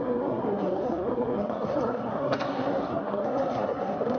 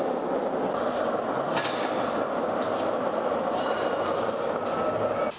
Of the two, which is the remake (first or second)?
first